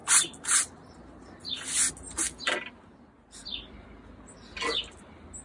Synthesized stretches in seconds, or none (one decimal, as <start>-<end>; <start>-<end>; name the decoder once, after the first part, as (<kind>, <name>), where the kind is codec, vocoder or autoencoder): none